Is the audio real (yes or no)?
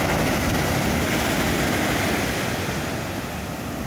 yes